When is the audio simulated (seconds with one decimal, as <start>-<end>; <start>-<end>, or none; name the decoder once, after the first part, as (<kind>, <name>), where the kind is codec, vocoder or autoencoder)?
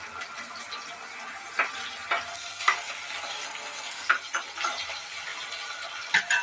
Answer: 2.3-2.9 (codec, SNAC); 3.3-4.1